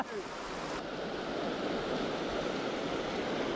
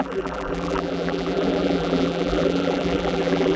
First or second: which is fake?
second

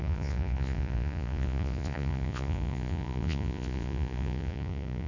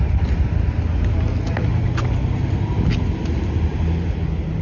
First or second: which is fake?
first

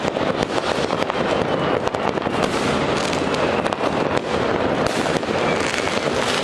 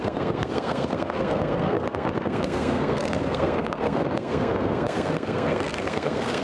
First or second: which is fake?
second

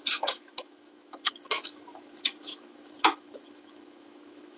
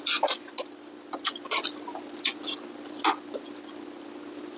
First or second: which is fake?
first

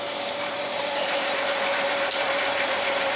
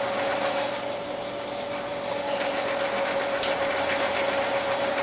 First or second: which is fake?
first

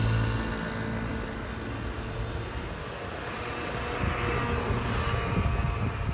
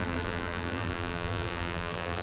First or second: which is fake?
second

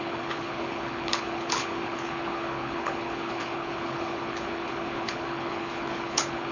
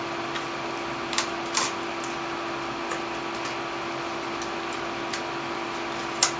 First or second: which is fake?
first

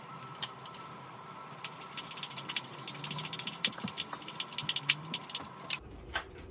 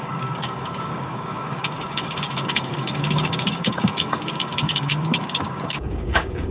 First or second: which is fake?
second